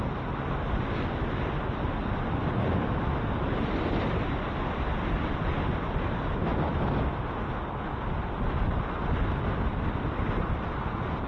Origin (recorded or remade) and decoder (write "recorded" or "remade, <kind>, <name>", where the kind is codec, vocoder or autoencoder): recorded